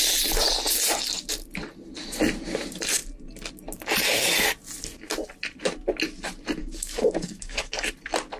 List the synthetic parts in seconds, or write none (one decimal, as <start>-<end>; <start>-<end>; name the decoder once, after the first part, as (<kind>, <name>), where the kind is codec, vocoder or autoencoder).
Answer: 6.6-7.9 (codec, DAC)